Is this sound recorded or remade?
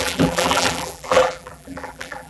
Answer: remade